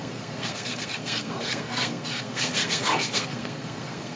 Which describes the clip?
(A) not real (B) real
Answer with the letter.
A